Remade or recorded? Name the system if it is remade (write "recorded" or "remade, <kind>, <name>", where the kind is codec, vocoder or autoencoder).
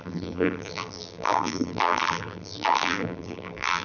remade, vocoder, BigVGAN v2